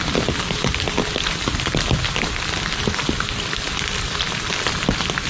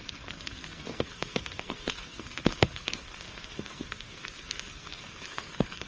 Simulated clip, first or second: second